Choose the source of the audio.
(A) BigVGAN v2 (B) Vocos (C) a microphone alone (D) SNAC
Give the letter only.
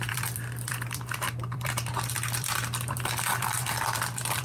A